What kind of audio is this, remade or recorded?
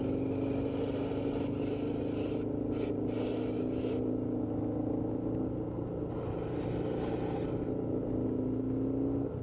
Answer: recorded